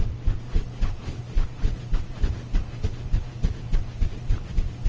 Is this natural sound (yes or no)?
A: no